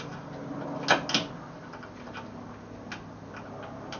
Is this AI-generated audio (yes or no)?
no